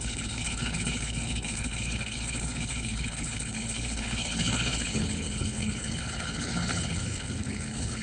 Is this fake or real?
fake